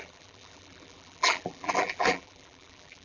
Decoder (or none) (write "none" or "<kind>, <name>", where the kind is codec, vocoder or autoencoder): vocoder, BigVGAN v2